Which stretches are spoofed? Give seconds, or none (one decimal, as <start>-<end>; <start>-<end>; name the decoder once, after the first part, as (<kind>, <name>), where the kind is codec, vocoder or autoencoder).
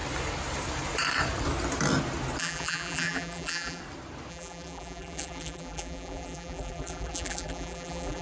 2.4-3.8 (vocoder, BigVGAN v2); 4.3-8.2